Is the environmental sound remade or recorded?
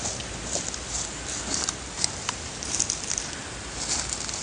recorded